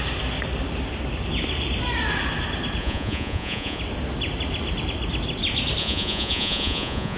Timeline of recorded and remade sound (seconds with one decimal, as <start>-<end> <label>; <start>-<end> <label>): 0.0-2.8 recorded; 2.8-3.8 remade; 3.8-5.8 recorded; 5.8-7.2 remade